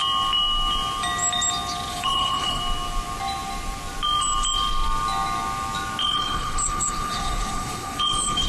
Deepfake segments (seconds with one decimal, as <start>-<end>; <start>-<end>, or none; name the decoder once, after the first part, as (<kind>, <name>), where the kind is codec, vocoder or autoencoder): 1.9-2.6 (codec, HILCodec); 6.0-8.5